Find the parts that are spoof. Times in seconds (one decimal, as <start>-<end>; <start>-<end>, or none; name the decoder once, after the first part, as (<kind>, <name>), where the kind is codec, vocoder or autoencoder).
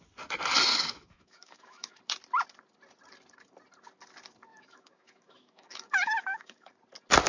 0.7-2.0 (autoencoder, DAC-VAE); 4.5-6.7